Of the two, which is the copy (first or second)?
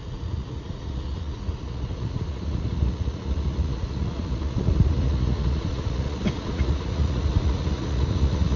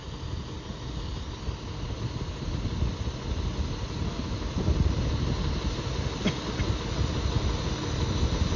first